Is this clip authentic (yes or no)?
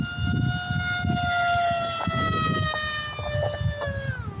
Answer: yes